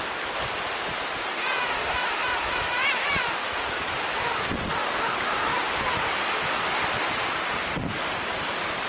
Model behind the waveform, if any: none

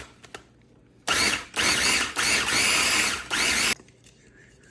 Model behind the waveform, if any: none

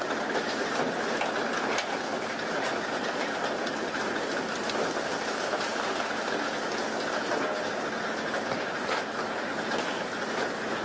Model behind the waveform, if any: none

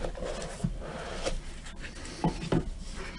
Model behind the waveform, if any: none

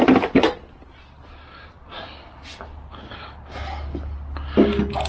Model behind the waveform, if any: none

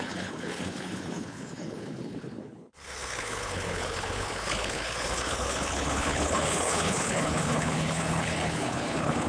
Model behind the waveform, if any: codec, HILCodec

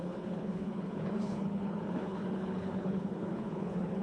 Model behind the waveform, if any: codec, HILCodec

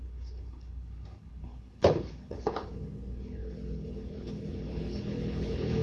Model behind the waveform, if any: codec, HILCodec